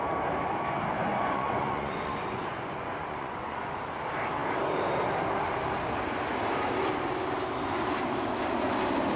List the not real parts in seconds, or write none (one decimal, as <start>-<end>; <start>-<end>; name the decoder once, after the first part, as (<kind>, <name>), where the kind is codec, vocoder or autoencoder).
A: 1.1-3.8 (vocoder, Vocos)